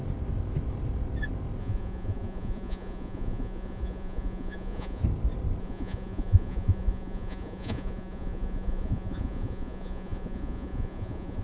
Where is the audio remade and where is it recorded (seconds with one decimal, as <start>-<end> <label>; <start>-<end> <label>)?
0.0-1.6 recorded; 1.6-5.0 remade; 5.0-5.6 recorded; 5.6-11.4 remade

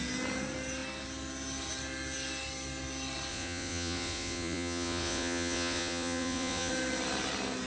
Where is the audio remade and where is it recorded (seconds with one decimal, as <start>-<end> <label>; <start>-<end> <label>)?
0.0-3.3 recorded; 3.3-6.7 remade; 6.7-7.7 recorded

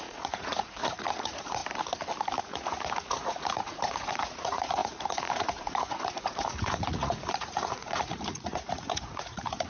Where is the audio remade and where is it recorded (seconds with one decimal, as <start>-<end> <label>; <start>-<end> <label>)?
0.0-1.6 remade; 1.6-2.4 recorded; 2.4-9.7 remade

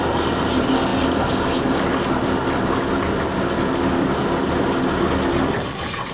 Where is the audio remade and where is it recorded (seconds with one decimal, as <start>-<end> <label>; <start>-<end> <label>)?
0.0-6.1 recorded

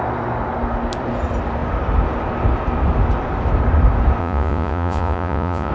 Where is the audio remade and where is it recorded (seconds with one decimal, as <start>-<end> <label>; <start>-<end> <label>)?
0.0-4.2 recorded; 4.2-5.7 remade

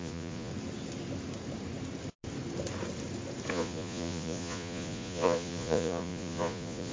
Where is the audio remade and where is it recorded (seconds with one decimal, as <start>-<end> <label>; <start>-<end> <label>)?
0.0-0.5 remade; 0.5-3.5 recorded; 3.5-6.9 remade

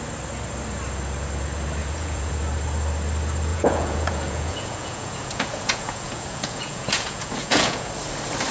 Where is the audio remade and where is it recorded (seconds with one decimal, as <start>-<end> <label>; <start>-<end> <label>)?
0.0-1.8 recorded; 1.8-2.3 remade; 2.3-3.5 recorded; 3.5-7.9 remade; 7.9-8.5 recorded

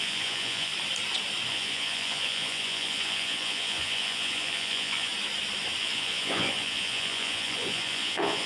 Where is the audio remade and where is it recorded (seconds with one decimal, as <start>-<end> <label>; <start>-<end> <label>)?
0.0-0.7 remade; 0.7-1.5 recorded; 1.5-5.1 remade; 5.1-5.8 recorded; 5.8-8.5 remade